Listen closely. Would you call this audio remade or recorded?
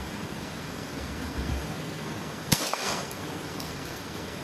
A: remade